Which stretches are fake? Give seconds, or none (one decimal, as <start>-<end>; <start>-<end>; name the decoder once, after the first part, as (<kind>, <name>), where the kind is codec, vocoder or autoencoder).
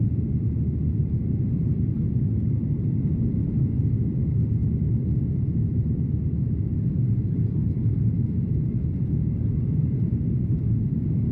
1.0-2.5 (vocoder, BigVGAN v2); 4.6-9.6